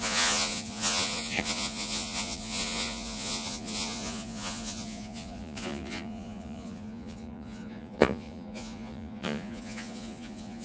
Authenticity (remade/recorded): remade